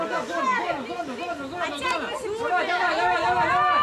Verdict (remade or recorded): recorded